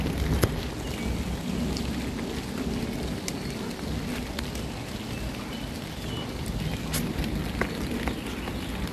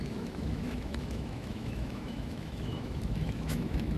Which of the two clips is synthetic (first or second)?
second